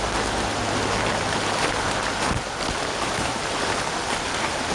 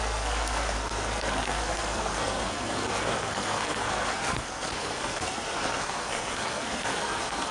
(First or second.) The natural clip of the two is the first